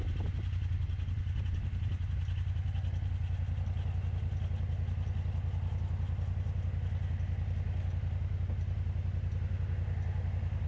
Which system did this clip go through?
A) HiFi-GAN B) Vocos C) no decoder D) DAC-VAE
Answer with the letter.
C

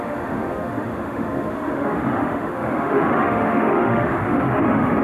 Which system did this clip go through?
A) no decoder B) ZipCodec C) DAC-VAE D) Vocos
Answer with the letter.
C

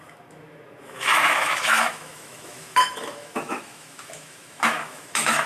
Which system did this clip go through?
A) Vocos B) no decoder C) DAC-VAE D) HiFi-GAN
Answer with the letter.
C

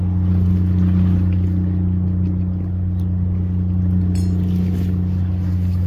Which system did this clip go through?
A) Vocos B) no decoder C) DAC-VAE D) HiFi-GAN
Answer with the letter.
B